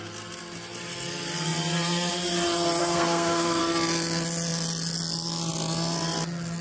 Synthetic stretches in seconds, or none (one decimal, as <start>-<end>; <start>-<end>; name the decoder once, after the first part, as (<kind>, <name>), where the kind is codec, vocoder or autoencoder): 2.8-3.6 (codec, SNAC)